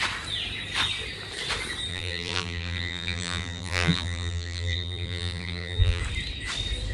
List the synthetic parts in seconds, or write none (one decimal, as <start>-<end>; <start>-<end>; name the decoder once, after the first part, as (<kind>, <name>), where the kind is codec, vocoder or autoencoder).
1.9-6.0 (vocoder, BigVGAN v2)